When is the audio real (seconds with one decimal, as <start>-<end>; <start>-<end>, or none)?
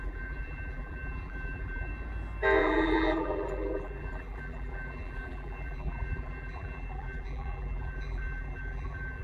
1.9-2.6